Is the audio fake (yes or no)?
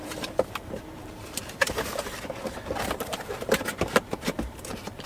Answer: yes